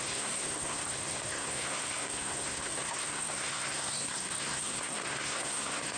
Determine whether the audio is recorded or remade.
remade